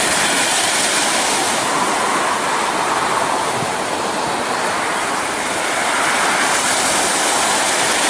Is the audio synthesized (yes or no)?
no